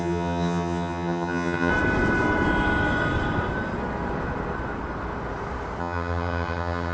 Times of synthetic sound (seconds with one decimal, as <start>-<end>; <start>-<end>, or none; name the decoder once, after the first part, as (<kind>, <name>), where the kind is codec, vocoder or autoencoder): 0.0-1.7 (vocoder, HiFi-GAN); 5.8-6.9